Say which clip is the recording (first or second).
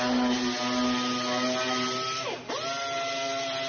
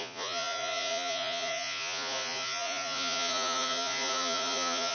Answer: first